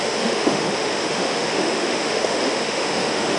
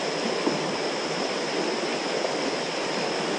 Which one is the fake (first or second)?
first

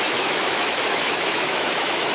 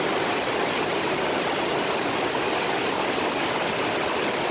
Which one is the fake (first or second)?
first